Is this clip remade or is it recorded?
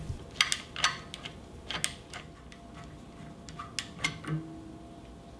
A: recorded